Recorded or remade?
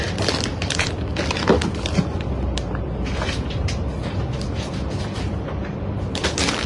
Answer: remade